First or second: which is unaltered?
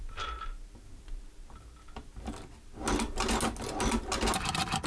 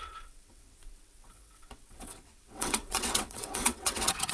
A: first